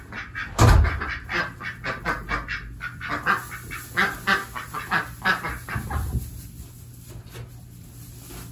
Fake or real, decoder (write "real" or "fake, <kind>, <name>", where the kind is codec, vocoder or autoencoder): real